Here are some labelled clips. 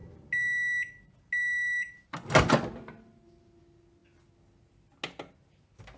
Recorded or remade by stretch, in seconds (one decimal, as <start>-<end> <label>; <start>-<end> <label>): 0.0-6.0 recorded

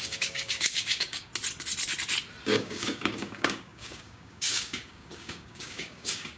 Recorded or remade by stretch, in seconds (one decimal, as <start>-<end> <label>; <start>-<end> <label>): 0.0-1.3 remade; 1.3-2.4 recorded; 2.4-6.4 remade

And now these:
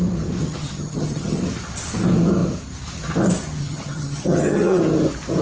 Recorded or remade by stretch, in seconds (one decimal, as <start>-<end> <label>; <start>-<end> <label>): 0.0-0.4 recorded; 0.4-1.4 remade; 1.4-3.6 recorded; 3.6-4.8 remade; 4.8-5.4 recorded